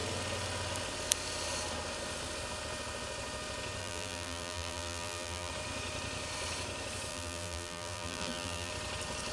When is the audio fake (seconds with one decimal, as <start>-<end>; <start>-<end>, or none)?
3.8-5.5; 7.1-8.7